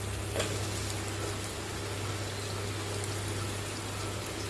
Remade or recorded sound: recorded